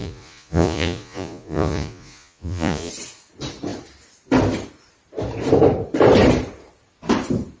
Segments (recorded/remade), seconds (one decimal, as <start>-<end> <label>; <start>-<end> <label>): 0.0-2.9 remade; 2.9-7.6 recorded

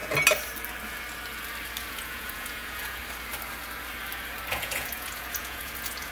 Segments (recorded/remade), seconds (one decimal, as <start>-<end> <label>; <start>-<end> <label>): 0.0-1.9 recorded; 1.9-3.0 remade; 3.0-4.5 recorded; 4.5-6.1 remade